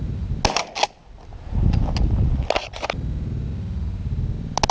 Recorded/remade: recorded